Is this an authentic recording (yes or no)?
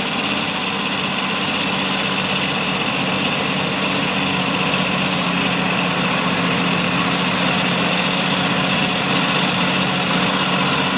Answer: yes